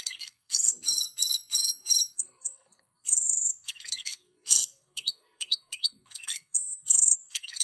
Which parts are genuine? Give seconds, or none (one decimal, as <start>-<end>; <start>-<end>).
none